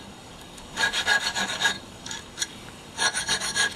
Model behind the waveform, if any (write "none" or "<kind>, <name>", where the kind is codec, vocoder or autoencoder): codec, DAC